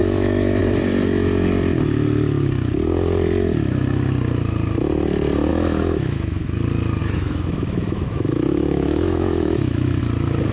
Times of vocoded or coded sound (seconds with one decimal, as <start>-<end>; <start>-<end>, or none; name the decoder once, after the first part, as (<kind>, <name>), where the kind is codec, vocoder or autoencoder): 0.0-0.6 (autoencoder, DAC-VAE); 5.5-6.4; 7.0-10.0